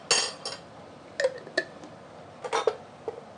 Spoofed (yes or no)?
no